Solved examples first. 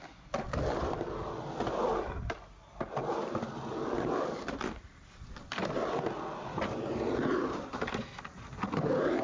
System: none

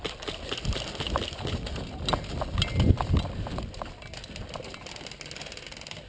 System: none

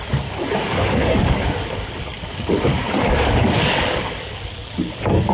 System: codec, DAC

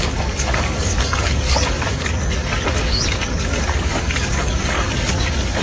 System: codec, DAC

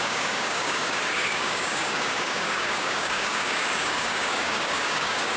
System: codec, DAC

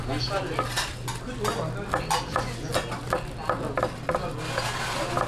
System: none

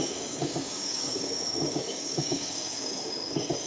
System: codec, DAC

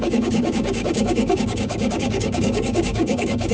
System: codec, DAC